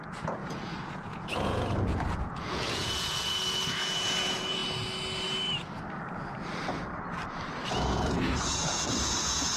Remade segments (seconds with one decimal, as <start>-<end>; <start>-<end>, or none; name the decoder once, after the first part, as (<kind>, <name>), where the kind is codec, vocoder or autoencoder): 0.0-4.6 (vocoder, Vocos); 7.9-9.6